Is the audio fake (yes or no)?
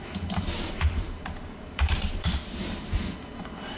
yes